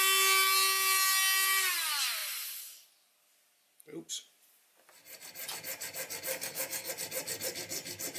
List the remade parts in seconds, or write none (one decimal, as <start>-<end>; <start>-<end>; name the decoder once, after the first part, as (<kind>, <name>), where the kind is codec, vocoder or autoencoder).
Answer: 6.3-6.9 (codec, SNAC)